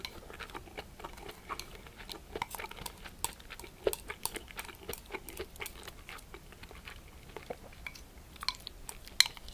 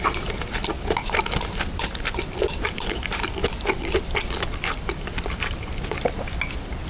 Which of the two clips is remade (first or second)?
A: second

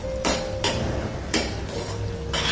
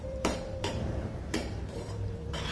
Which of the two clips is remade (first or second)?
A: second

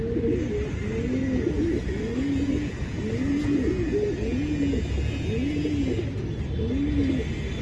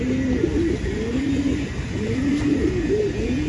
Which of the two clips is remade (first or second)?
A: second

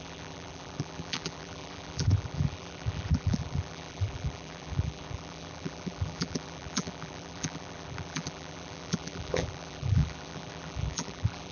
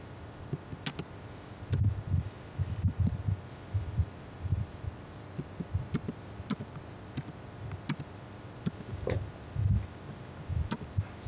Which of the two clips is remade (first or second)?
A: first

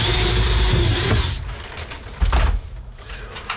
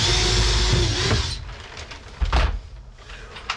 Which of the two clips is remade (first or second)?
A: first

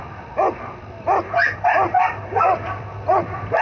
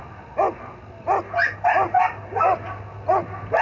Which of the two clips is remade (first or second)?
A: first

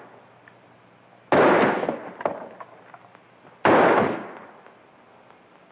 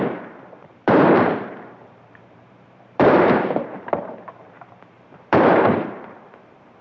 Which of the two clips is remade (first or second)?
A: second